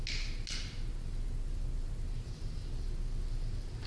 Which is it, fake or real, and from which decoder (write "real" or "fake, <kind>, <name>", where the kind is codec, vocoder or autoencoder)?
real